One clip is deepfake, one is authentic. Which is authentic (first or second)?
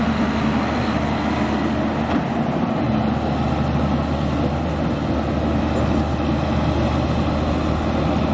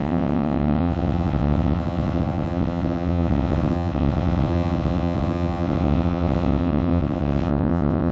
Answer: first